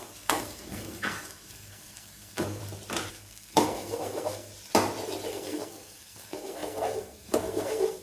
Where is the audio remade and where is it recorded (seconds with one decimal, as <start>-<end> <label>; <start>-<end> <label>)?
0.0-2.6 remade; 2.6-3.1 recorded; 3.1-4.5 remade; 4.5-5.3 recorded; 5.3-8.0 remade